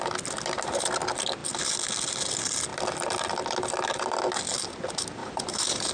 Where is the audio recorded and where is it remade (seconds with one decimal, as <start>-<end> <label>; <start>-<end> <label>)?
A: 0.0-5.2 recorded; 5.2-5.9 remade